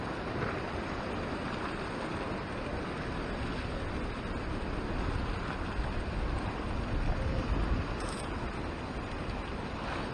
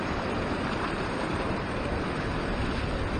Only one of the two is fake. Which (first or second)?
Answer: second